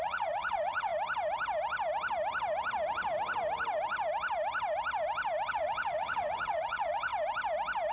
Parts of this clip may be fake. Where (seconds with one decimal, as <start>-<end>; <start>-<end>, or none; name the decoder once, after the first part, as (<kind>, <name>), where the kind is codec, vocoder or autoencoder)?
0.0-0.9 (vocoder, Vocos); 5.5-7.1